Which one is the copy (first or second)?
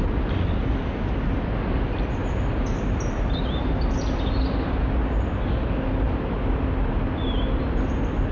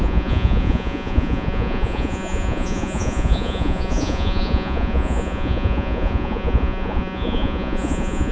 second